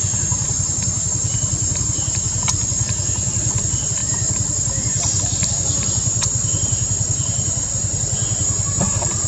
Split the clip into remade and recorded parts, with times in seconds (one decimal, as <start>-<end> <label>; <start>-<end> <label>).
0.0-9.3 recorded